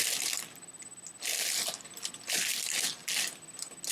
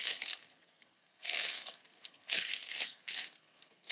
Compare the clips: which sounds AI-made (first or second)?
second